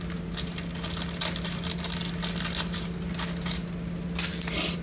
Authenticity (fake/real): real